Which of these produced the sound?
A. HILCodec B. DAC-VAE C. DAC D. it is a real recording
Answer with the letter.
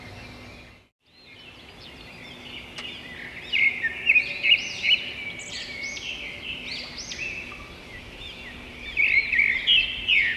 D